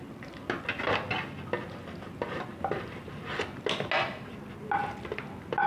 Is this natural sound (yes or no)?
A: yes